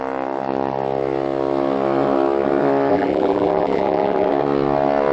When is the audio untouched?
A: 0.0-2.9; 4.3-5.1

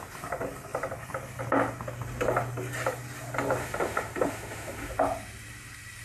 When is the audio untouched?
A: 0.0-3.6; 4.9-6.0

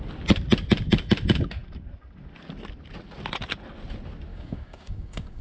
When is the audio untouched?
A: 0.0-4.3

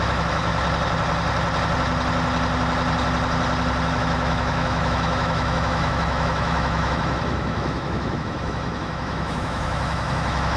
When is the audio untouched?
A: 0.5-3.9

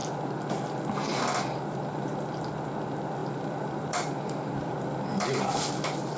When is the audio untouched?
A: 0.0-1.1; 2.4-3.2; 5.7-6.2

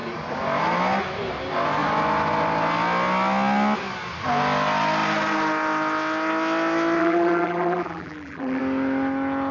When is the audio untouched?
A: 0.0-7.0; 8.6-9.5

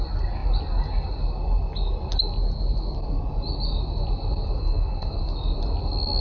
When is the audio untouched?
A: 0.0-4.6; 5.2-6.2

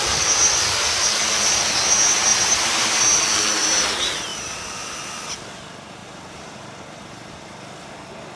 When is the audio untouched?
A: 0.0-2.3; 3.0-4.3; 5.0-6.0; 7.4-8.4